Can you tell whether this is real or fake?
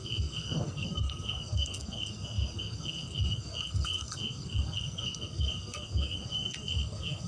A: fake